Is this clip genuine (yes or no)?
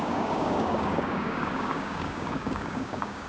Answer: no